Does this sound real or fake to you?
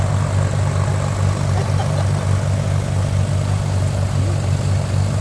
real